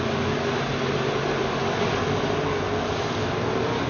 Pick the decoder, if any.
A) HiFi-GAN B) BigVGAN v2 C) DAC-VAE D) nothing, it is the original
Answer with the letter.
D